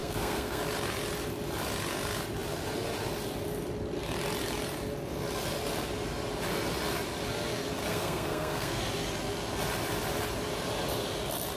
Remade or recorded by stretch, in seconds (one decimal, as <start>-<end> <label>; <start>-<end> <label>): 0.0-0.6 remade; 0.6-7.8 recorded; 7.8-8.8 remade; 8.8-11.6 recorded